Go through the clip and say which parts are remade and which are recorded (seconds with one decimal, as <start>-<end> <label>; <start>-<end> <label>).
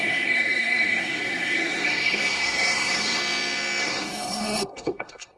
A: 0.0-3.2 remade; 3.2-3.8 recorded; 3.8-5.4 remade